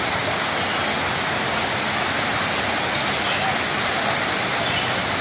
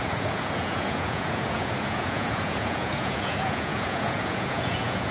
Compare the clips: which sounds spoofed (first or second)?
second